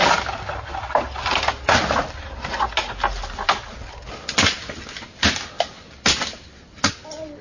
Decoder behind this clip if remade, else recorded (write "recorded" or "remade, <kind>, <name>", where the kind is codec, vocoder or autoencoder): recorded